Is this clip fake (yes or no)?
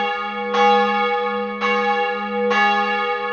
no